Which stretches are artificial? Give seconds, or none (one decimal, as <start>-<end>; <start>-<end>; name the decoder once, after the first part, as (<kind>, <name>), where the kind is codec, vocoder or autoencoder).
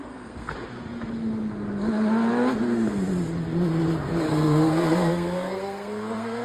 0.0-0.5 (codec, SNAC); 4.3-6.4